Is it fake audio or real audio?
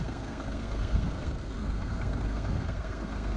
fake